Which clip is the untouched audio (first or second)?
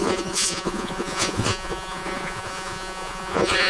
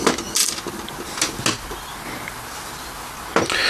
second